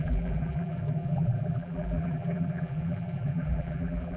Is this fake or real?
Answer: fake